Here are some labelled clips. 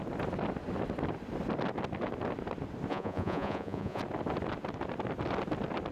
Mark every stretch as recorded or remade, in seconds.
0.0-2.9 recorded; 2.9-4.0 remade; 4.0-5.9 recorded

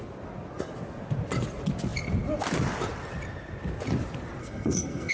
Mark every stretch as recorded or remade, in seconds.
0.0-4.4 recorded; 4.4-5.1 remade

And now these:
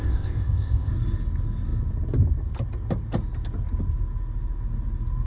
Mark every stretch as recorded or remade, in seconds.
0.0-0.9 remade; 0.9-5.3 recorded

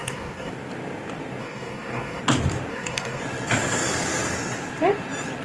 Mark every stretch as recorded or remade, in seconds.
0.0-0.5 remade; 0.5-1.4 recorded; 1.4-2.2 remade; 2.2-2.7 recorded; 2.7-3.2 remade; 3.2-5.4 recorded